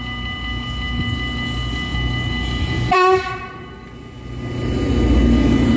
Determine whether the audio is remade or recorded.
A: recorded